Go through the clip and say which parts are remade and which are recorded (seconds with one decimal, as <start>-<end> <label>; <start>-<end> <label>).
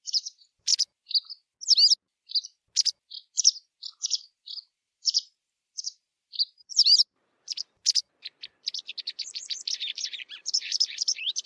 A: 0.0-0.7 remade; 0.7-4.0 recorded; 4.0-7.8 remade; 7.8-9.0 recorded; 9.0-11.5 remade